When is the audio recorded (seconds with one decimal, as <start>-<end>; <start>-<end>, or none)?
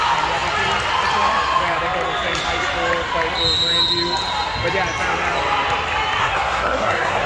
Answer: 0.0-6.2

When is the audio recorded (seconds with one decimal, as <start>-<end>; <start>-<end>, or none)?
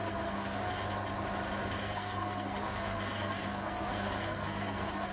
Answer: 0.7-1.8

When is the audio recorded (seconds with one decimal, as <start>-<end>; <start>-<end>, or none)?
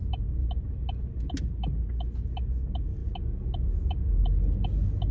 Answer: 0.0-5.1